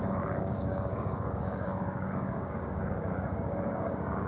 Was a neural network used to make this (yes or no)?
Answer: yes